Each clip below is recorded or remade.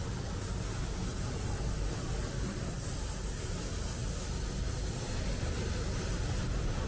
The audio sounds recorded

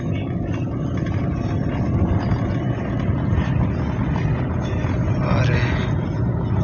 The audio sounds recorded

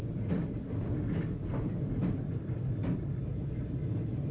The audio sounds remade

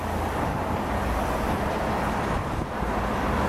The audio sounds recorded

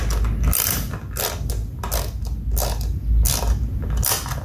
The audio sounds recorded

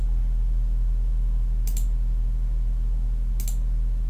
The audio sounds recorded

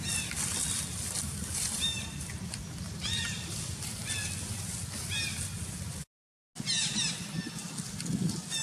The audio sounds recorded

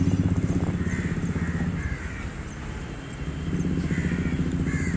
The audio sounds recorded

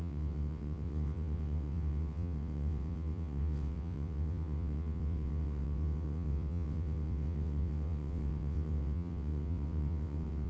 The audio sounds remade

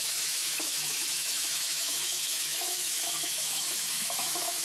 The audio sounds remade